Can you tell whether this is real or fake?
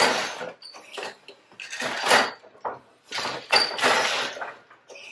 real